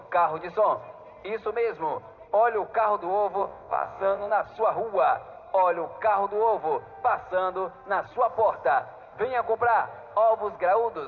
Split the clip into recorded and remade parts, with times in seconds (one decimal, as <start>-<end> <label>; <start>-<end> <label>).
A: 0.0-3.4 recorded; 3.4-4.3 remade; 4.3-11.1 recorded